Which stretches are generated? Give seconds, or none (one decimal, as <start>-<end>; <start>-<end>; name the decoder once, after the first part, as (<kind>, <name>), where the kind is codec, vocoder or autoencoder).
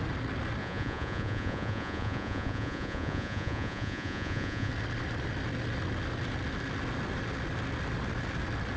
0.6-4.7 (vocoder, Vocos)